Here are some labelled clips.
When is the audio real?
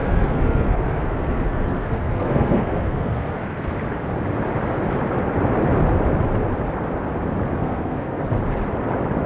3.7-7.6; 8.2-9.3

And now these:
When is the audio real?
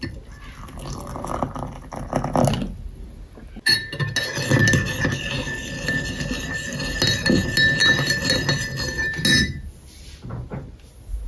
0.0-11.3